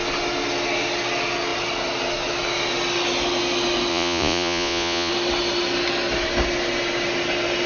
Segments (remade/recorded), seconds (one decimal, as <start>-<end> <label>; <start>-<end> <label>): 0.0-3.9 recorded; 3.9-5.1 remade; 5.1-7.7 recorded